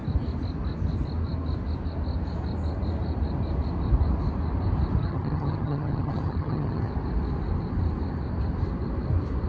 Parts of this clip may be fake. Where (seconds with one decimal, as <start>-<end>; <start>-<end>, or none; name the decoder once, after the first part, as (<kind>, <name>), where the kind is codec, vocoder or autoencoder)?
5.0-6.9 (vocoder, HiFi-GAN)